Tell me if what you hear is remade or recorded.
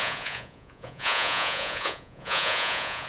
remade